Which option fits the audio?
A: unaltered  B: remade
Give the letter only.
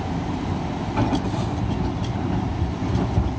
A